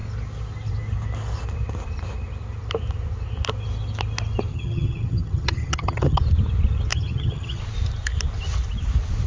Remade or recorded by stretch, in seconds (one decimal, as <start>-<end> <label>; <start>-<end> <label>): 0.0-4.5 recorded; 4.5-6.2 remade; 6.2-6.9 recorded; 6.9-7.6 remade; 7.6-9.3 recorded